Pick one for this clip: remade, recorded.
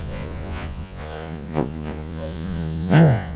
remade